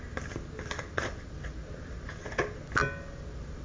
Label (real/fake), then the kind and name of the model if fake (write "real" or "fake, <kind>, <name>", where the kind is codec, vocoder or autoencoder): real